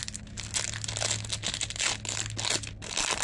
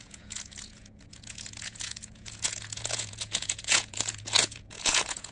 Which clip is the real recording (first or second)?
first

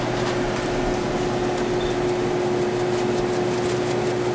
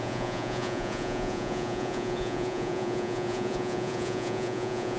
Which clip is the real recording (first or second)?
first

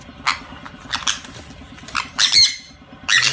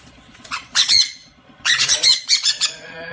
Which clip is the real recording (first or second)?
first